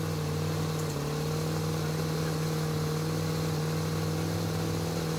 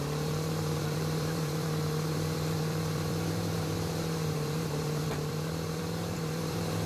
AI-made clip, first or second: second